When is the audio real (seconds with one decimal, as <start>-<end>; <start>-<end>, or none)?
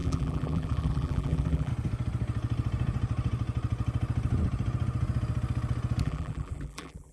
1.7-6.0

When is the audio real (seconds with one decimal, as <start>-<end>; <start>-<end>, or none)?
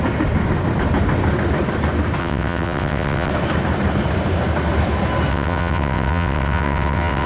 0.0-2.2; 3.3-5.3